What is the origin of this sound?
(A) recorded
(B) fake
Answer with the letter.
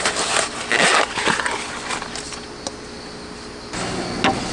A